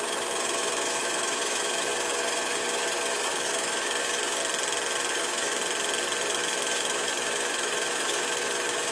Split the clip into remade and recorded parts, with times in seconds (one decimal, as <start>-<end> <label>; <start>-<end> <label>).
0.0-4.4 remade; 4.4-5.1 recorded; 5.1-5.6 remade; 5.6-6.3 recorded; 6.3-8.9 remade

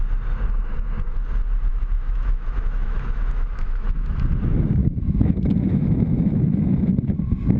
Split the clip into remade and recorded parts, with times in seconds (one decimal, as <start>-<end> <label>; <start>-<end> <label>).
0.0-1.7 recorded; 1.7-4.1 remade; 4.1-4.8 recorded; 4.8-7.1 remade; 7.1-7.6 recorded

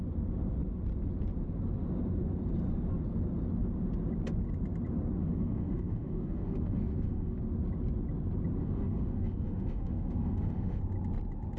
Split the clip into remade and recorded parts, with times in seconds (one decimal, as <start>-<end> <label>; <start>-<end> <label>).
0.0-5.2 recorded; 5.2-7.4 remade; 7.4-8.6 recorded; 8.6-10.8 remade; 10.8-11.6 recorded

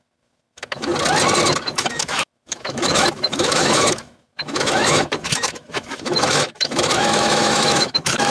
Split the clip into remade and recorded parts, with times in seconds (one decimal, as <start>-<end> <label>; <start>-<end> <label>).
0.0-0.9 remade; 0.9-1.6 recorded; 1.6-8.3 remade